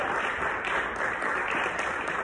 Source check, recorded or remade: remade